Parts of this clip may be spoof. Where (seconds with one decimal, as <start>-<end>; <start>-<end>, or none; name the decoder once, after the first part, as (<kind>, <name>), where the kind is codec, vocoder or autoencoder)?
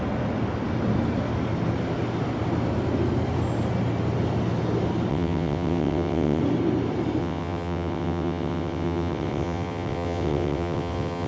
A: 5.1-6.4 (vocoder, WaveNeXt); 7.2-11.3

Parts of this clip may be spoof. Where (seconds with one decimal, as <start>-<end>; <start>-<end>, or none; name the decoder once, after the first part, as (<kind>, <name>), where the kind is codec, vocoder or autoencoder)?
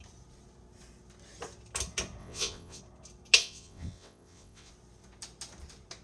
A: 2.2-2.8 (vocoder, WaveNeXt); 3.4-4.7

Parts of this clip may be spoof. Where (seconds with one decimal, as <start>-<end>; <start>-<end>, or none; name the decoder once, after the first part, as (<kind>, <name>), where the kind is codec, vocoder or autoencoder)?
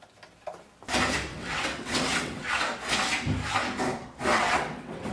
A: 1.3-2.5 (vocoder, WaveNeXt); 4.3-5.1